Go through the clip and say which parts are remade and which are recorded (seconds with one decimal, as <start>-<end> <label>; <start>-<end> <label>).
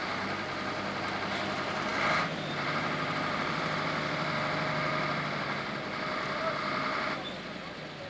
0.0-8.1 recorded